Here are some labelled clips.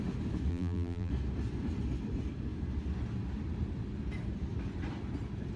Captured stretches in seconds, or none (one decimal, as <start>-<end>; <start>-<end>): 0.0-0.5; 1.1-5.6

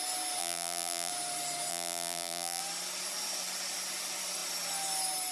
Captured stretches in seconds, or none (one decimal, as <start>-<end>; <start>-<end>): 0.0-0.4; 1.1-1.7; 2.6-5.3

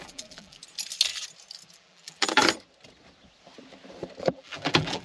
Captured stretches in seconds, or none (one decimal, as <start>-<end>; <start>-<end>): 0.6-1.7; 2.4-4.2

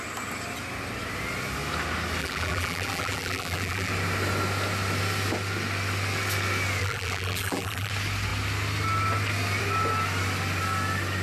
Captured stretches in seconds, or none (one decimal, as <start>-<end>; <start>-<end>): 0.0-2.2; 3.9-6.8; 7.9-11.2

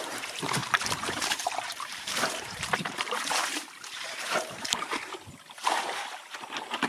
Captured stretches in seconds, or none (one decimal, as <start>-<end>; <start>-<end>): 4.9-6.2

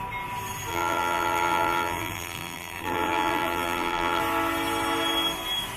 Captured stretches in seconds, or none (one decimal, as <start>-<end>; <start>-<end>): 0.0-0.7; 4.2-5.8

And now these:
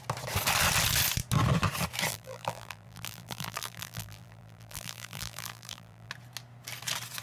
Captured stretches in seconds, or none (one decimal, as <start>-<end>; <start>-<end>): 0.0-2.1; 6.1-7.2